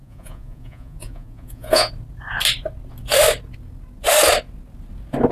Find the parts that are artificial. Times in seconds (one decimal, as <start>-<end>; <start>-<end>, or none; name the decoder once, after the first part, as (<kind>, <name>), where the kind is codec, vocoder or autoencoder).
0.0-1.9 (vocoder, Vocos)